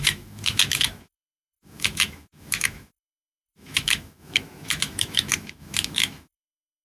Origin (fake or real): fake